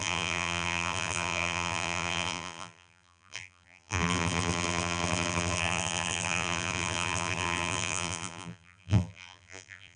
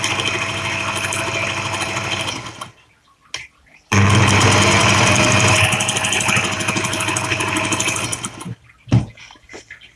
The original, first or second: second